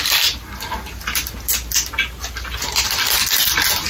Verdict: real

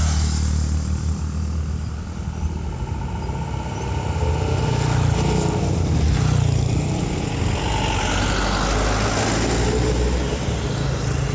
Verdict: real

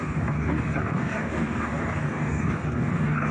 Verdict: fake